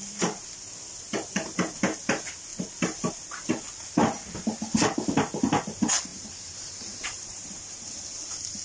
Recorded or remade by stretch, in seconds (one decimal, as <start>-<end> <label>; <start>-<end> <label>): 0.0-6.1 recorded; 6.1-8.6 remade